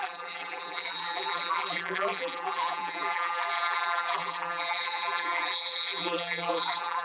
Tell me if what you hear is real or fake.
fake